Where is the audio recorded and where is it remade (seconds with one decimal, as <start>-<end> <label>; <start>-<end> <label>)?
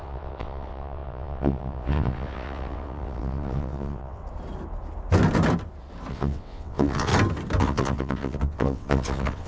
0.0-4.2 remade; 4.2-6.1 recorded; 6.1-7.1 remade; 7.1-7.6 recorded; 7.6-9.5 remade